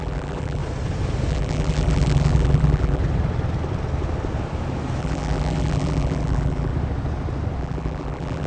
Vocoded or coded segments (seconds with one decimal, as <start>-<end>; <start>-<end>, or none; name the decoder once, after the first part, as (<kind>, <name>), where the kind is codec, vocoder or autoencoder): 0.0-0.6 (vocoder, BigVGAN v2); 1.3-3.0; 5.0-6.7; 7.6-8.5